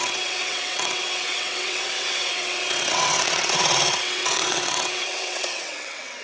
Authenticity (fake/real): fake